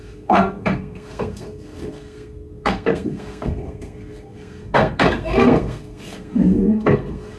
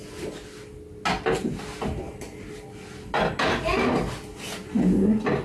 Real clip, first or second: second